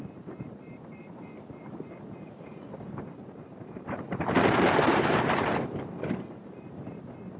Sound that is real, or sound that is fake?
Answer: fake